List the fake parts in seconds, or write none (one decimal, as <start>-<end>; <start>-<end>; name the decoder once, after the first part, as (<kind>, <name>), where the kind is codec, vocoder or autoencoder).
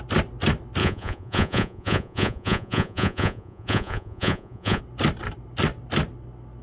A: 0.8-4.8 (vocoder, Vocos)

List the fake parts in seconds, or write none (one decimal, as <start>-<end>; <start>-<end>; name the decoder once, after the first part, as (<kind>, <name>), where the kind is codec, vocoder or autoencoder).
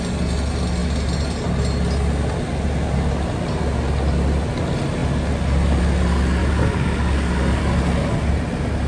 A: 6.4-7.6 (codec, DAC)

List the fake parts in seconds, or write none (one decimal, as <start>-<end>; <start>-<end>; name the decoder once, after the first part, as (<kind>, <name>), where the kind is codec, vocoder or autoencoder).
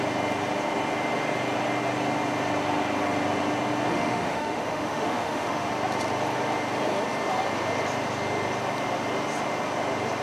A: 3.9-5.7 (autoencoder, DAC-VAE)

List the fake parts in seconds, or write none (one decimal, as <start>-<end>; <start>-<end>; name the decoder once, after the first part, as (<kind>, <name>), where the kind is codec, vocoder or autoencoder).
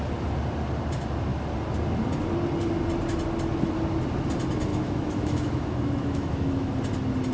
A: 4.7-6.8 (autoencoder, DAC-VAE)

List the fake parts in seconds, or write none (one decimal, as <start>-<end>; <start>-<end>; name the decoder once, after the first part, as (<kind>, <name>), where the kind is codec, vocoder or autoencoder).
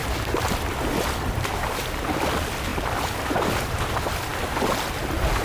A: 0.0-2.3 (vocoder, BigVGAN v2); 2.7-3.9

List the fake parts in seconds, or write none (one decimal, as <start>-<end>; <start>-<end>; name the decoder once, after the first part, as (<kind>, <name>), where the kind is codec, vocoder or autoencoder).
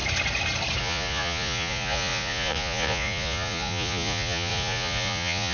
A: 0.8-5.5 (vocoder, Vocos)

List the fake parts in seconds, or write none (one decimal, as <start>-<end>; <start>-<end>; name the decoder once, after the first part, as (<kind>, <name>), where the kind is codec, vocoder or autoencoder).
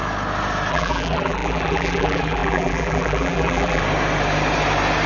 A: 0.7-3.8 (vocoder, BigVGAN v2)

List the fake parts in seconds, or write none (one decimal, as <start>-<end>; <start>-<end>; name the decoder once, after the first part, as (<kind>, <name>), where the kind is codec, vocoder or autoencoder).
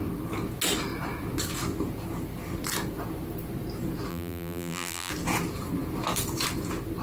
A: 4.1-5.1 (vocoder, BigVGAN v2)